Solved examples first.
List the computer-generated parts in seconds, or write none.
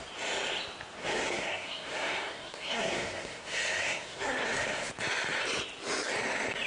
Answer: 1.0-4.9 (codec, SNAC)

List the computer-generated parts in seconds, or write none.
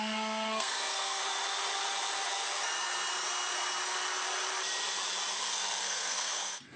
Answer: 0.0-1.2 (codec, SNAC); 5.3-6.8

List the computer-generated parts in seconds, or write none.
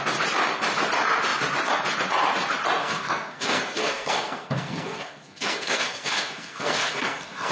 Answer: 2.8-7.5 (codec, SNAC)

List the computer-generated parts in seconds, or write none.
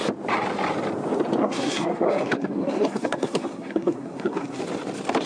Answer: 1.4-4.6 (codec, SNAC)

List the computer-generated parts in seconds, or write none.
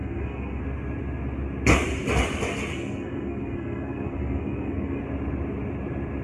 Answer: 0.0-0.6 (codec, SNAC); 2.7-5.0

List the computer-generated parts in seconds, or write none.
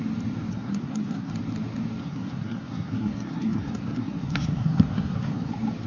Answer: 0.5-1.3 (codec, SNAC); 2.0-5.5